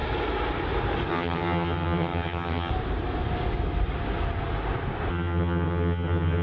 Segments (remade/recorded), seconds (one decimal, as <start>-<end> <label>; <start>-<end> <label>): 0.0-1.1 recorded; 1.1-2.7 remade; 2.7-5.1 recorded; 5.1-6.4 remade